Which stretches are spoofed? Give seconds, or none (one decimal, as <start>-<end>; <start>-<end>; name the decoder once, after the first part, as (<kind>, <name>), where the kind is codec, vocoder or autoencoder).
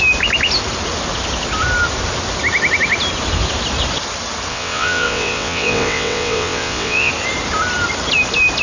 4.5-7.1 (vocoder, WaveNeXt)